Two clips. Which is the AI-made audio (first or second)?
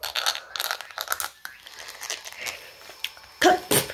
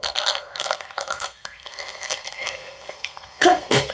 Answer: second